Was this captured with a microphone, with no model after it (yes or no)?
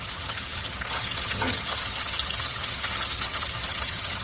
no